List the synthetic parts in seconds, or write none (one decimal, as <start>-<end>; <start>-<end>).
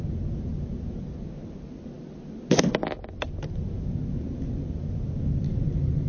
none